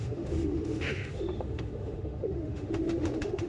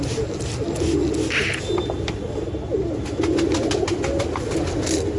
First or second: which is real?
second